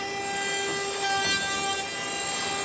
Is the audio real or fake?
real